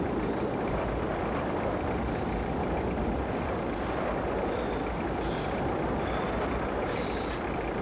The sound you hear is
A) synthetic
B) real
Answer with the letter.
B